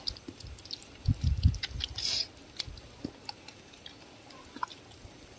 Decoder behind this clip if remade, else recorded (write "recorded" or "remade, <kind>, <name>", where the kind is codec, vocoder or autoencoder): recorded